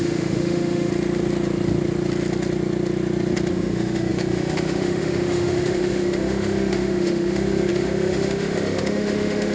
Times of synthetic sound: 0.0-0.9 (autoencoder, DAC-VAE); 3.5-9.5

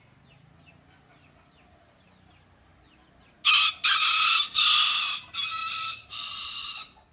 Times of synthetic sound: 5.6-6.2 (vocoder, BigVGAN v2)

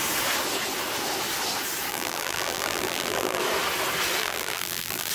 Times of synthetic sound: 1.9-3.4 (vocoder, BigVGAN v2); 4.2-5.1